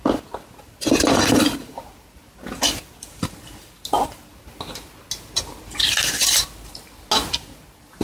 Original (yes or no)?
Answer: yes